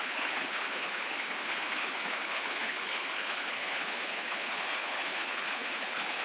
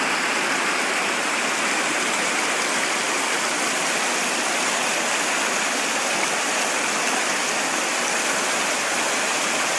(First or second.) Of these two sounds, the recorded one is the second